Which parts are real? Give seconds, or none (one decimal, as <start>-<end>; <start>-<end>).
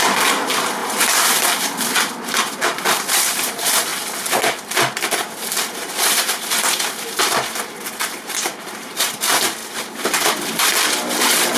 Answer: 3.9-7.9; 9.6-11.6